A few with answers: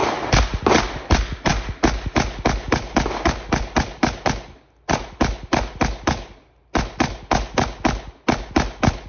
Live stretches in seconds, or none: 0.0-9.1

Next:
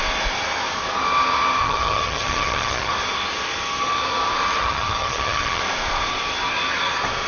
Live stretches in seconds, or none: 0.0-1.6; 2.9-4.6; 5.6-7.3

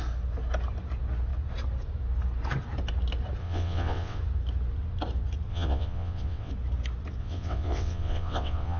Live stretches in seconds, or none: 0.0-3.4; 4.2-5.5; 6.5-7.2

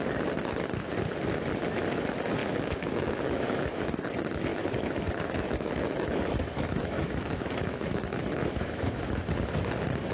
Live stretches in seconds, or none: 0.0-2.4; 4.0-4.5; 9.3-10.1

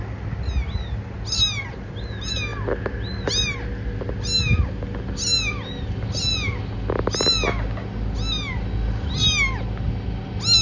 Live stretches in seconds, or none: 0.0-10.6